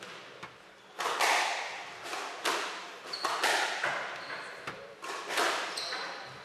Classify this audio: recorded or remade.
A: recorded